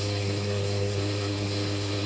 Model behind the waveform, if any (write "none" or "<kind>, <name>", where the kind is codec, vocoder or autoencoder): codec, SNAC